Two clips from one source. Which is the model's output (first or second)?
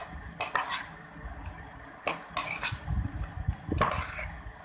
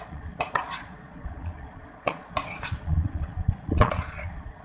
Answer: second